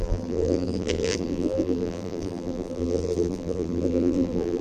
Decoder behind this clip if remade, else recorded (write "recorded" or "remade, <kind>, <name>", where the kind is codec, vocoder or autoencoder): remade, vocoder, BigVGAN v2